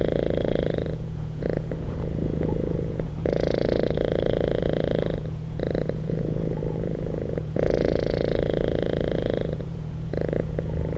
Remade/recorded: remade